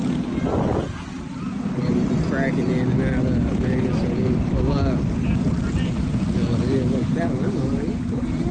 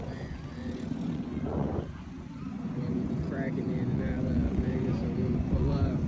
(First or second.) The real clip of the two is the first